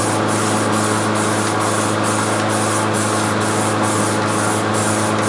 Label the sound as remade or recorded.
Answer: recorded